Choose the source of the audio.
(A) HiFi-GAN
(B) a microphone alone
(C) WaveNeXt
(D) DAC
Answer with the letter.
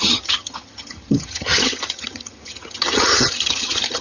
A